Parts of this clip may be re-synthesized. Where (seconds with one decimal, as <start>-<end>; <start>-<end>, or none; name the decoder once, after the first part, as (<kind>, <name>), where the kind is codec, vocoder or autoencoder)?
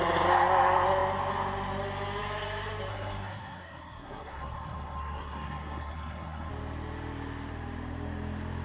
2.9-6.5 (codec, SNAC)